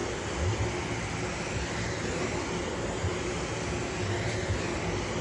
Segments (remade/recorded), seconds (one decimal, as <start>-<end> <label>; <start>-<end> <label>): 0.0-5.2 recorded